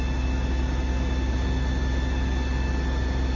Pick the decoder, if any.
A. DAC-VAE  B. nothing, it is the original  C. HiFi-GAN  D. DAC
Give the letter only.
B